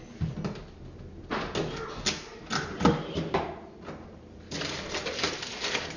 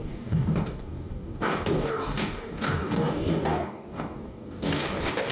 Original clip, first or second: first